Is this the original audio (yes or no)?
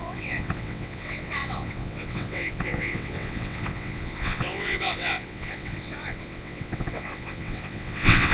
no